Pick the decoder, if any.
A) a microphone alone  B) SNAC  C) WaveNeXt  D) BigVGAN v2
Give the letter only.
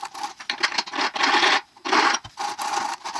A